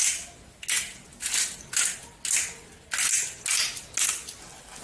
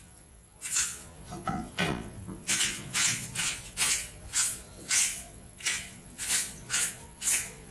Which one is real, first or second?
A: first